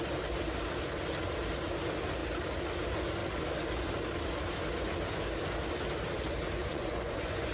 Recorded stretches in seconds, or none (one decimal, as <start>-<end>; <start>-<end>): 0.0-6.6